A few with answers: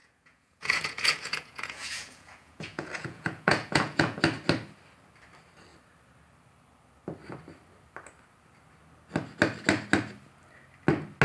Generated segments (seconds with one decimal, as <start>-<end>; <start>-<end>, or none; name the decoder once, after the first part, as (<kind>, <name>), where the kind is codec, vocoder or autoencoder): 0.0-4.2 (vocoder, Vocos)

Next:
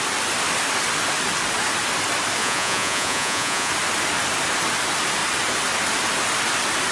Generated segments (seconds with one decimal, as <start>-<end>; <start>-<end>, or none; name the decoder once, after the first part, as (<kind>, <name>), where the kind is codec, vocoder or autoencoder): 2.4-3.7 (vocoder, Vocos)

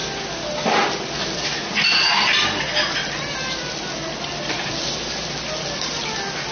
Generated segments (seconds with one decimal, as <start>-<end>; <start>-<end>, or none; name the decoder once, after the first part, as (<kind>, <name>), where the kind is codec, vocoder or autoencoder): none